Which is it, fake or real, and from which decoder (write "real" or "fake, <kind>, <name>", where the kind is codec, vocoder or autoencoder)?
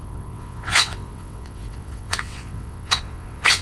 fake, vocoder, WaveNeXt